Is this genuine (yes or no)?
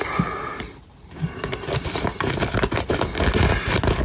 yes